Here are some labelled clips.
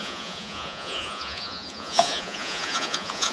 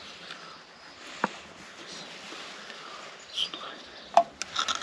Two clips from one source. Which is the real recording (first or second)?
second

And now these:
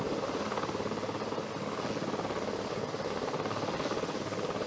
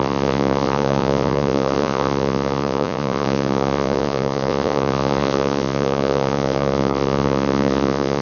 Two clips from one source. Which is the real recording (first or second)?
first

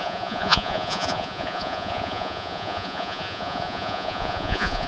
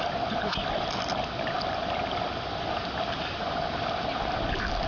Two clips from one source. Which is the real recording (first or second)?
second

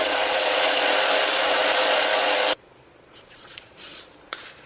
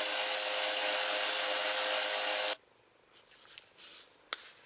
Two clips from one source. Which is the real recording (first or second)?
second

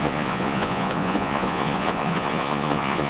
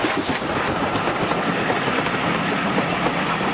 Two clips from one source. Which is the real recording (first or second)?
second